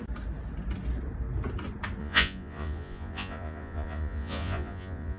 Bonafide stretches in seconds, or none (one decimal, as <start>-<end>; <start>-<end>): 0.0-2.0